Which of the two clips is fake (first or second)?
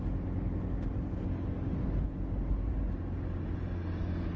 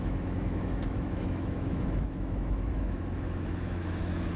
second